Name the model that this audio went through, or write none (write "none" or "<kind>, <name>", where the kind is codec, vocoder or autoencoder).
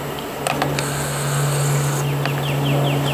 none